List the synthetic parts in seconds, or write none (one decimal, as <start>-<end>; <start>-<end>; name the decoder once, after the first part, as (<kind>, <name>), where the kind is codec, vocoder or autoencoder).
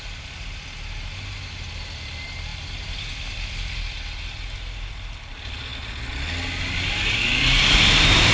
none